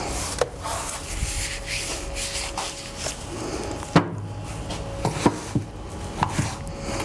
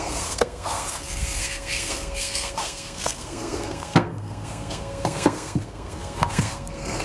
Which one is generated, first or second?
second